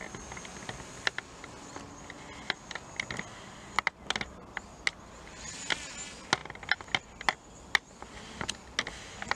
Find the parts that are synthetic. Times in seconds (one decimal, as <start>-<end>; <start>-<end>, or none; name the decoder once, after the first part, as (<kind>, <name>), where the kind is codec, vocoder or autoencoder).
none